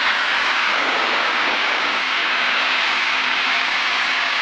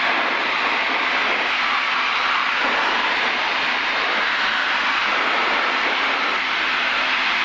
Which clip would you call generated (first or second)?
first